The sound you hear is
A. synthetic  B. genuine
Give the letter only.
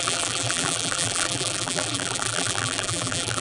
A